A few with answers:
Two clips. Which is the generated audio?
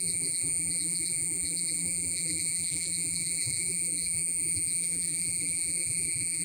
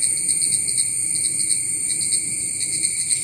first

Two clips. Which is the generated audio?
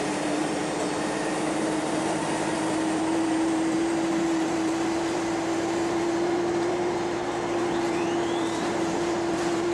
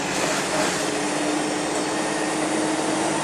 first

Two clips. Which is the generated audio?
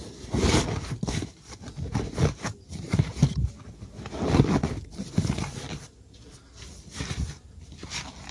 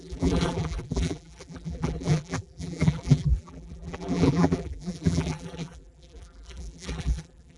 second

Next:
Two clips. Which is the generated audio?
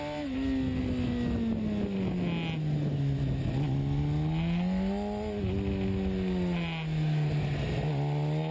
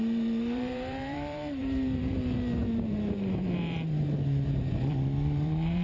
second